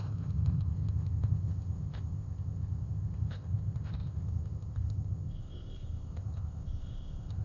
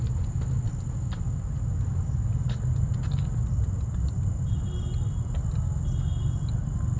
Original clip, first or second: second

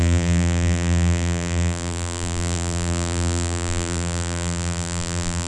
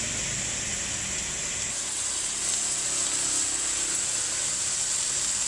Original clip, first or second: second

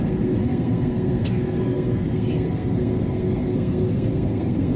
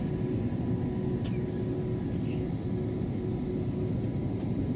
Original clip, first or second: second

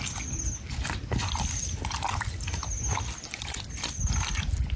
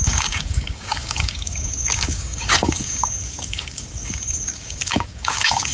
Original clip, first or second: first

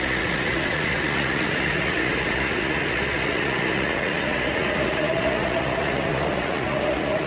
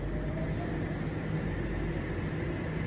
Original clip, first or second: second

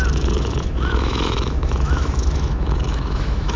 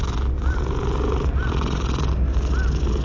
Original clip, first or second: second